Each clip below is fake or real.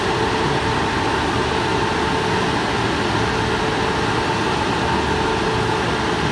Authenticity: real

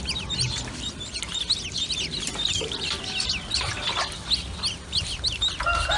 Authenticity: real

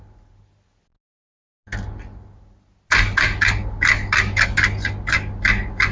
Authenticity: real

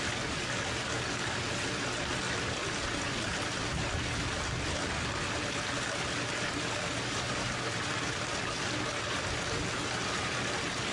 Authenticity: real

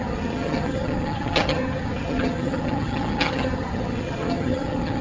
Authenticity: fake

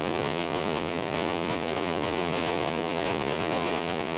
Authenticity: fake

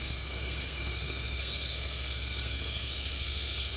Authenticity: fake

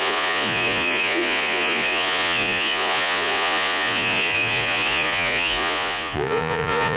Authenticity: fake